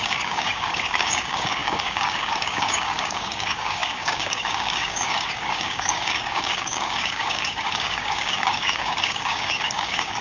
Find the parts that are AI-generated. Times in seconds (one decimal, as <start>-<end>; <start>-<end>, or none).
0.0-10.2